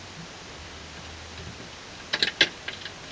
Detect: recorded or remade recorded